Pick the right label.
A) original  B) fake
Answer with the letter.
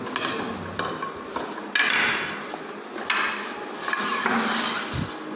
A